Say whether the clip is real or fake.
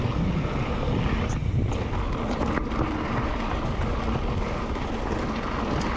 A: real